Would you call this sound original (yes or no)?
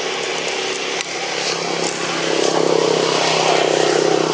yes